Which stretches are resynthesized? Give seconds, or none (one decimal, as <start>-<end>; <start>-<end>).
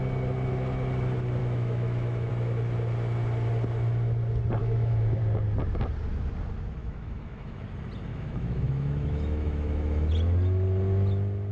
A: 1.4-2.3; 4.6-5.2; 6.8-7.6; 8.1-10.1